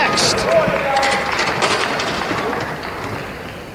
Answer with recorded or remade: recorded